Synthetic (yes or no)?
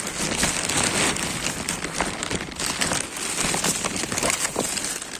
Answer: no